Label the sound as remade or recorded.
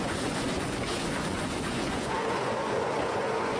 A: remade